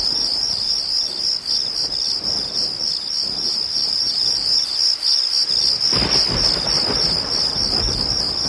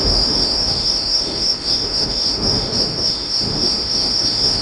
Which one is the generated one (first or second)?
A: second